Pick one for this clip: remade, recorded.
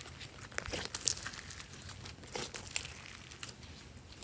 recorded